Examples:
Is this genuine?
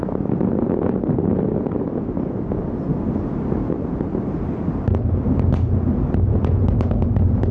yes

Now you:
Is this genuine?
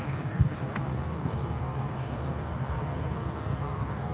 no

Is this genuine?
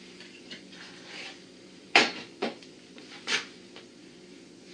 no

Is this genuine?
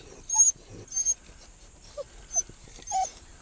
yes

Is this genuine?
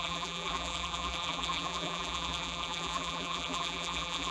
no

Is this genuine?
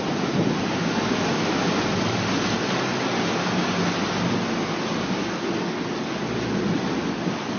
yes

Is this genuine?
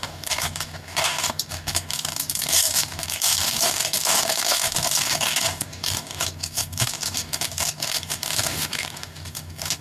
no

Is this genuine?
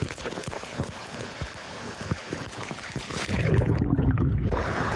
no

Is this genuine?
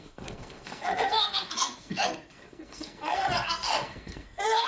no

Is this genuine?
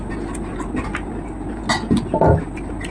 yes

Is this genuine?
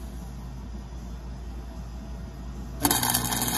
yes